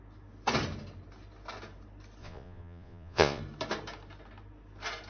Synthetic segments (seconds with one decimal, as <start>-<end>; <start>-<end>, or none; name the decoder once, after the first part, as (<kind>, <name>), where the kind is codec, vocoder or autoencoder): 2.2-3.4 (vocoder, Vocos)